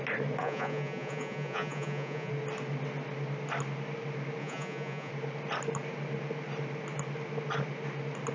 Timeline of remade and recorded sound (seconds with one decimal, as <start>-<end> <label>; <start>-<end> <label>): 0.0-0.4 recorded; 0.4-2.3 remade; 2.3-4.4 recorded; 4.4-5.1 remade; 5.1-8.3 recorded